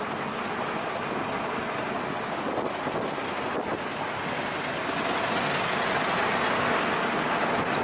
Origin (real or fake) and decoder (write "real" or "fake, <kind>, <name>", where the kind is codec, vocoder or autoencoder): real